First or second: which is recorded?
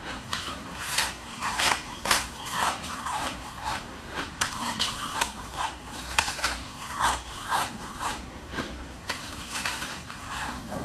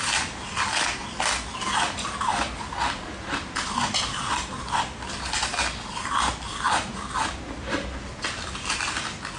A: second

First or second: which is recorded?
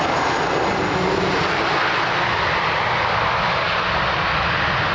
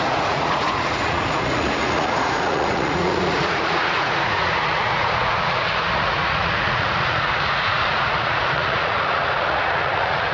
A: first